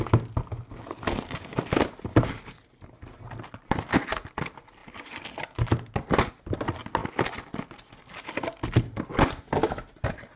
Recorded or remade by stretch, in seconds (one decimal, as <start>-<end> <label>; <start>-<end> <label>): 0.0-10.4 recorded